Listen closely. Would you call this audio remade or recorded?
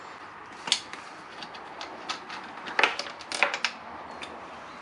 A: recorded